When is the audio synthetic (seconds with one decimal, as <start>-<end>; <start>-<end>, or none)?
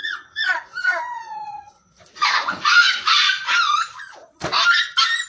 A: 0.0-4.4